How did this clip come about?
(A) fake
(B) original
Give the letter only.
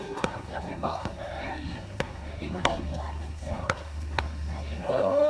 A